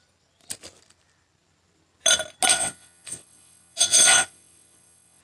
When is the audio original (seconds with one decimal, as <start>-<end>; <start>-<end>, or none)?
0.0-2.5